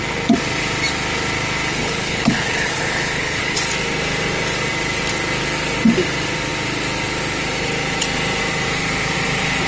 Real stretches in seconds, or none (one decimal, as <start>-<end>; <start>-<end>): 0.0-1.7; 3.6-9.7